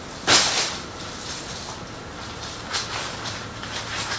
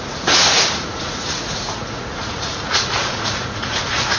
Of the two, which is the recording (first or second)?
first